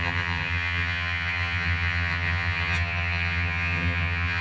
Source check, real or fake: fake